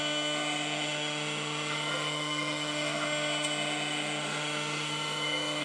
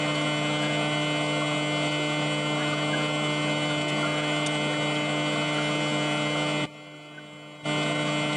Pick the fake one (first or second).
first